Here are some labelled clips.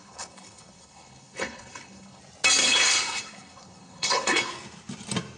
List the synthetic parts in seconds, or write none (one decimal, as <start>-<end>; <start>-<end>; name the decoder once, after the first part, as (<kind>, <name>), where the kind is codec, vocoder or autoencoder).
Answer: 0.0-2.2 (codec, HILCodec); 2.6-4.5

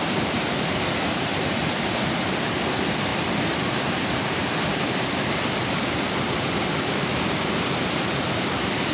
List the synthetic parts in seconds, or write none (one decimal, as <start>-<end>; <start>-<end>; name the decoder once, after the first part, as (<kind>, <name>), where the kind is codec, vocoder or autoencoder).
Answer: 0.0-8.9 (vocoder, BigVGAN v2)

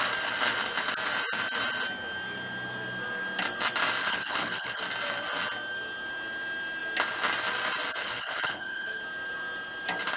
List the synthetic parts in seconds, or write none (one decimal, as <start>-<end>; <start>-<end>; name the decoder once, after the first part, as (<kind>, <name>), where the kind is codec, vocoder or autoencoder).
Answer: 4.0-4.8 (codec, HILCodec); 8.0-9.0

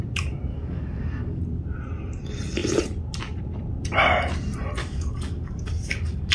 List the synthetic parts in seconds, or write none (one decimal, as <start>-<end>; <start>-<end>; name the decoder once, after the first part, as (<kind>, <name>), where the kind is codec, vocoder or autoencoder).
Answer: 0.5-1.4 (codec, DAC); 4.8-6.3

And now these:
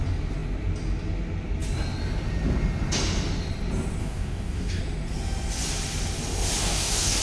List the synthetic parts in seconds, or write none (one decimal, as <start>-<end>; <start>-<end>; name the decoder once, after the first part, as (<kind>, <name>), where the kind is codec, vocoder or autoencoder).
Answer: 4.0-4.8 (codec, DAC); 6.6-7.2

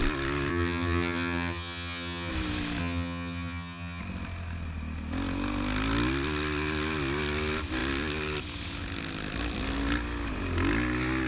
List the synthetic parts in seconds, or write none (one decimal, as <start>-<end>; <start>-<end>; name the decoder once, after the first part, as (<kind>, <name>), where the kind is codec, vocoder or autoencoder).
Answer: 0.5-2.3 (vocoder, HiFi-GAN); 2.8-4.0